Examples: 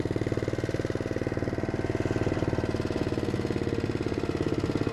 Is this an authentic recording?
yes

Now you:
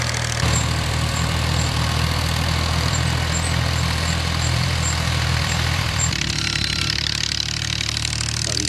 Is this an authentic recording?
no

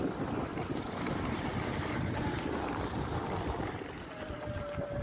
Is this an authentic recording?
yes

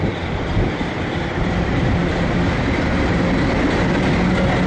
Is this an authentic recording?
yes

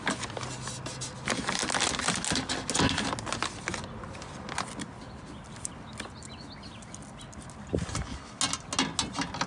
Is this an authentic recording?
yes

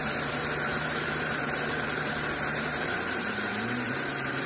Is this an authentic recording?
no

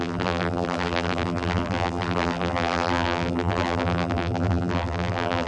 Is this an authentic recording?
no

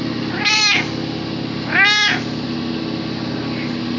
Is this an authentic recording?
yes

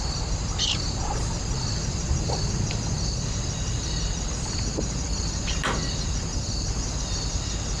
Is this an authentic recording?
no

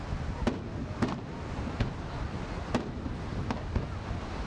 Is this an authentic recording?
yes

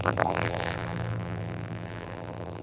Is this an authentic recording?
no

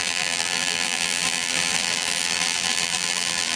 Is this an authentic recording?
no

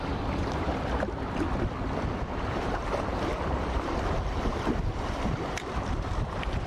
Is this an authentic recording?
no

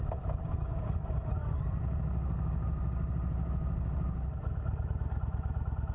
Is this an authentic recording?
yes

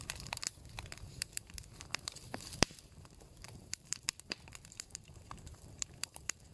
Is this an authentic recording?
no